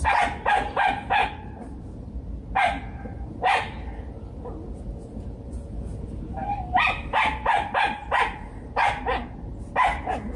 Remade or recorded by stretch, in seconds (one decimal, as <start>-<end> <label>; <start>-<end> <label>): 0.0-1.2 recorded; 1.2-1.8 remade; 1.8-10.4 recorded